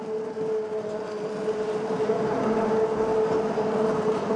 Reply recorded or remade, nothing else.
recorded